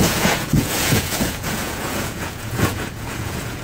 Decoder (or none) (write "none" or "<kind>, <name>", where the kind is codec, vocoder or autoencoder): vocoder, Vocos